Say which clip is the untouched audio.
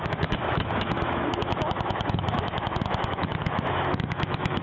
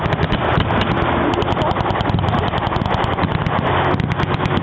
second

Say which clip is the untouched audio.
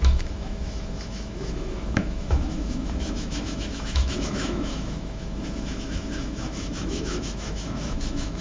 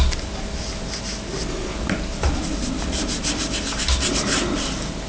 second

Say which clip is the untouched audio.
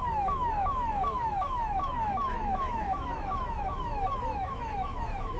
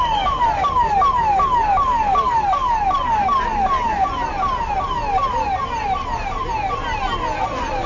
second